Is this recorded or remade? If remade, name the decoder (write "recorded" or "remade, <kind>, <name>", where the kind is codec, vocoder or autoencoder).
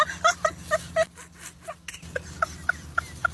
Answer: recorded